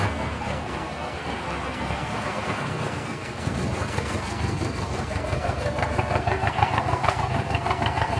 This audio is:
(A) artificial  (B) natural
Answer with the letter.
A